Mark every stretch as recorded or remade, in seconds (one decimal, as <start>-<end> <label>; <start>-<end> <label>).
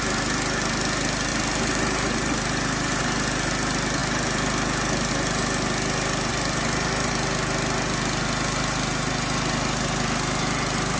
0.0-1.3 recorded; 1.3-3.0 remade; 3.0-6.3 recorded; 6.3-7.1 remade; 7.1-11.0 recorded